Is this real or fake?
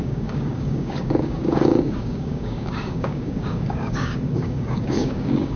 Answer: fake